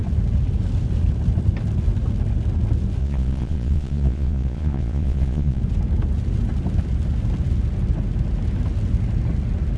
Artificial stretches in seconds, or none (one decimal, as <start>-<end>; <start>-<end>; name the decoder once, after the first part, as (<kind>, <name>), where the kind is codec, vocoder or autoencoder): 3.0-5.6 (vocoder, Vocos)